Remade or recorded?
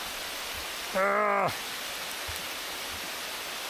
recorded